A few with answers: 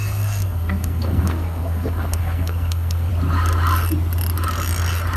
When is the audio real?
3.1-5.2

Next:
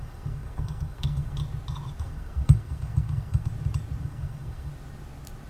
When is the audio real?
1.4-2.0; 3.5-4.0; 4.7-5.5

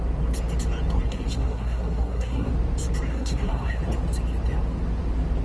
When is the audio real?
0.0-1.1; 2.5-3.1; 3.8-5.4

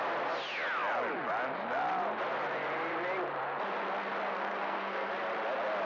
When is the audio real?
0.0-4.3; 5.1-5.9

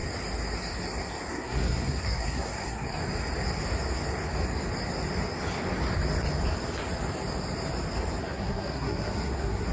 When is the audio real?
0.0-1.3; 3.0-8.2

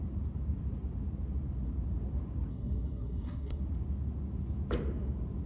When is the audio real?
0.0-2.5; 3.6-5.5

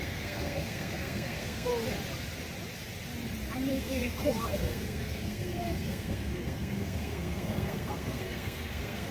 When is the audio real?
1.7-3.7